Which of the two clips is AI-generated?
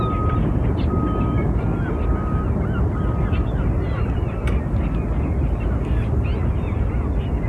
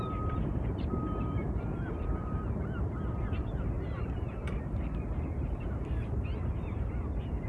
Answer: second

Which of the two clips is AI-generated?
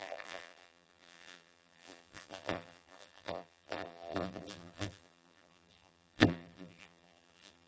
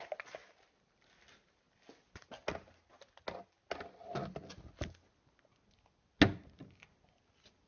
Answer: first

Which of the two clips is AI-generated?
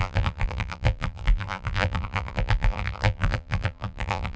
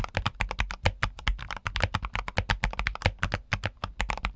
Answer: first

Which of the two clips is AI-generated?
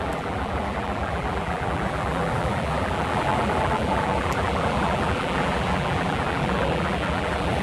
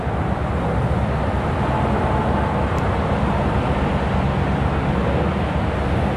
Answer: first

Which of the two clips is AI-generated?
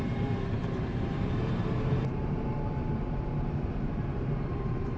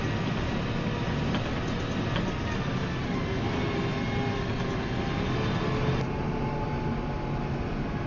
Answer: first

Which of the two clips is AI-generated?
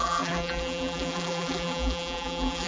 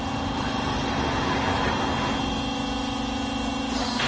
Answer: first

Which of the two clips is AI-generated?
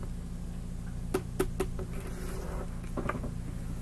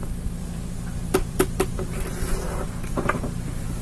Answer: second